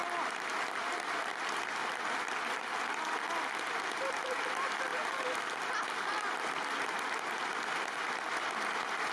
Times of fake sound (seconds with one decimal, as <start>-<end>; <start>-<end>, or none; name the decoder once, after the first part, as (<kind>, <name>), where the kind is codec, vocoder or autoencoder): none

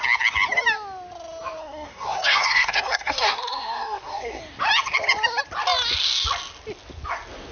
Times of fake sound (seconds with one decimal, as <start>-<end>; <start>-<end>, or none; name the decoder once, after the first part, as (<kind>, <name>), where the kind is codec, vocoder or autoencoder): 1.6-4.4 (codec, SNAC)

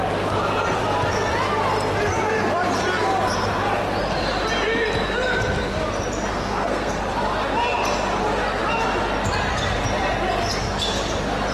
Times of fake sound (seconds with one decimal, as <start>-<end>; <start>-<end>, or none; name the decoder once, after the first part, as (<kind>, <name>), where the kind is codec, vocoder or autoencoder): 6.3-7.0 (codec, SNAC)

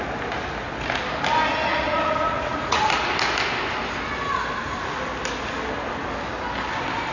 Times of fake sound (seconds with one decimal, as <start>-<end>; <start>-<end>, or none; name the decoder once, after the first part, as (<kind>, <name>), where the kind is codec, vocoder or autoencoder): 1.7-2.9 (vocoder, Vocos)

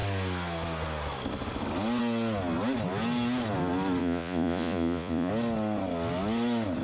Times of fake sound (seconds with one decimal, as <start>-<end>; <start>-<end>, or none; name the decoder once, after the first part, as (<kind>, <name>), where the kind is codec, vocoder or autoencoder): 4.0-5.3 (vocoder, Vocos)

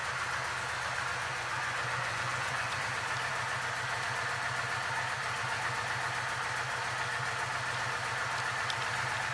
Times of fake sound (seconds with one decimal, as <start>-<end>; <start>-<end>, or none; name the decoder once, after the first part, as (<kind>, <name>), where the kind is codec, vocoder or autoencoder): 1.2-2.8 (vocoder, Vocos)

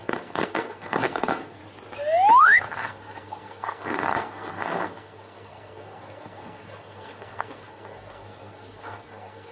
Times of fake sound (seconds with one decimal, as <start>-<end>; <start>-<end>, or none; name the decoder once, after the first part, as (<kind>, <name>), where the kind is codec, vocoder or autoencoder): 0.0-1.6 (codec, SNAC); 2.4-9.5

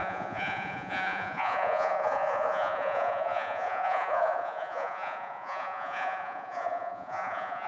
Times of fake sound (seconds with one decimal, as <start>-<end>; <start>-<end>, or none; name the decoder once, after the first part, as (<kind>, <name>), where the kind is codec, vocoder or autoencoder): 0.0-7.7 (vocoder, Vocos)